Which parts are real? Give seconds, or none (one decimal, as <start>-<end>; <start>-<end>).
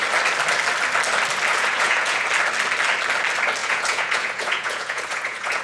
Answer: 0.0-1.5; 2.3-3.6